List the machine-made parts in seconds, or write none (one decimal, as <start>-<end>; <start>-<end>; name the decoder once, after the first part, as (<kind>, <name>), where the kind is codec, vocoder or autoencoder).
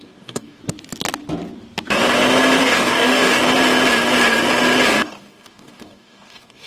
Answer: 0.0-0.6 (codec, DAC); 2.6-3.4; 4.9-6.7